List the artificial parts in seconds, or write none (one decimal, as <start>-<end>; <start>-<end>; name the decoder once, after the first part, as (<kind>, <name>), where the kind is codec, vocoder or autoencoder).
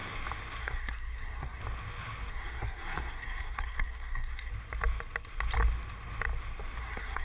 0.6-1.6 (codec, SNAC); 2.3-4.5; 6.8-7.2